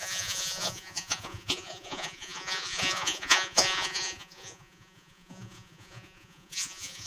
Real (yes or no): no